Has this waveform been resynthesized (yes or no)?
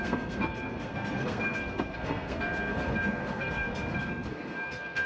yes